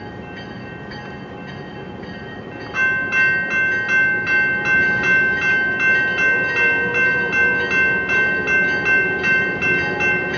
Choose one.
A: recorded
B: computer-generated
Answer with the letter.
A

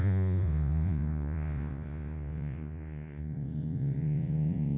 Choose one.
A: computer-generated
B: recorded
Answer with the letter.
A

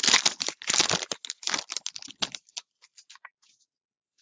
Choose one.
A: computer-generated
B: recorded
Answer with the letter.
B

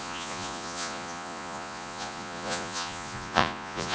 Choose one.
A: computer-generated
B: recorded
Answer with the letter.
A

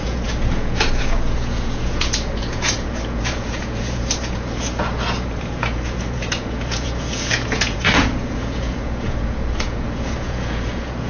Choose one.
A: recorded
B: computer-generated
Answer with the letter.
B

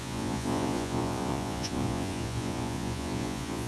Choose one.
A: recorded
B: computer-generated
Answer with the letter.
B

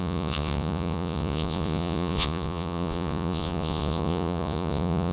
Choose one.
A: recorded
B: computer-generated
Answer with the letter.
B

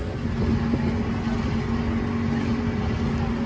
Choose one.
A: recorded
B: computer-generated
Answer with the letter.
A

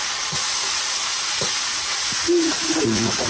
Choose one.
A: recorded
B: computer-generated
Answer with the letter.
B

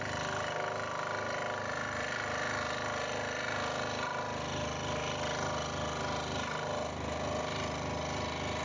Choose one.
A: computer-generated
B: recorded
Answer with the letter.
B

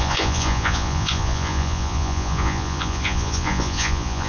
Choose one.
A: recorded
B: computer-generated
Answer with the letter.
B